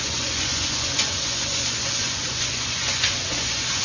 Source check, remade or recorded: remade